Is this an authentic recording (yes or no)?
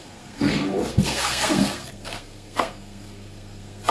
no